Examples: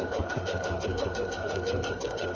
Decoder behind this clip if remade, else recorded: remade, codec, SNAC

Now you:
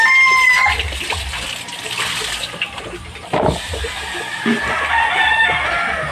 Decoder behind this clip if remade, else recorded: recorded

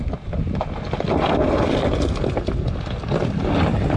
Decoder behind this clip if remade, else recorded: recorded